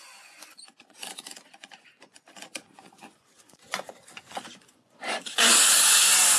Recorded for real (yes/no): no